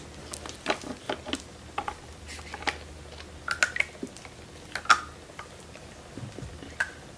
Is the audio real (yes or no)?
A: yes